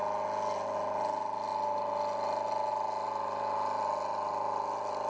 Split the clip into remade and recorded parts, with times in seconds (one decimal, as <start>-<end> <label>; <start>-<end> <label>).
0.0-5.1 recorded